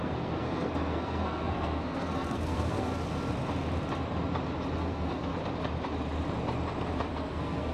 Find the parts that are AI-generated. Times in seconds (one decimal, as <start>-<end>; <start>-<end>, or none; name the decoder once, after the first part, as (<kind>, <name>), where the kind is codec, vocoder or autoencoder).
0.0-2.9 (codec, SNAC); 4.8-5.3; 7.1-7.7

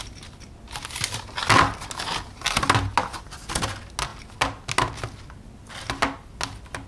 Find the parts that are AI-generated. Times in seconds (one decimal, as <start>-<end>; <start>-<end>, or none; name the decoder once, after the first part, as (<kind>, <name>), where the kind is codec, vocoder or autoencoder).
none

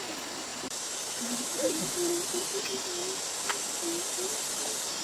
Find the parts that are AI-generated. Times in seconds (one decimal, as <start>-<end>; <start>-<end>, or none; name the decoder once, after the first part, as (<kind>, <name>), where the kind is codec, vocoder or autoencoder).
0.5-2.6 (vocoder, BigVGAN v2)

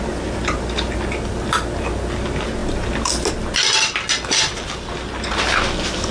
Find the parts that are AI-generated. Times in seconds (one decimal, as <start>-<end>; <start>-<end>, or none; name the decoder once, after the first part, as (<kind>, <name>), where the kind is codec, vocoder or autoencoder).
none

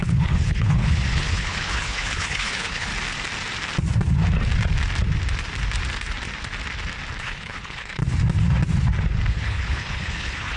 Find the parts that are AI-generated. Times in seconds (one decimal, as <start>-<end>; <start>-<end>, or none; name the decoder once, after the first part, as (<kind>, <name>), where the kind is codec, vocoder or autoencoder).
0.0-2.9 (codec, HILCodec); 7.2-8.0; 9.3-10.6